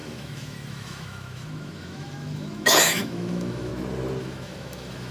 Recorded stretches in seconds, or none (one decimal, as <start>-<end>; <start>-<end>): 3.7-4.2